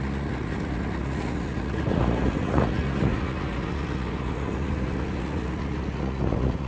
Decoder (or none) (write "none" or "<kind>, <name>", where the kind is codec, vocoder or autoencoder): vocoder, Vocos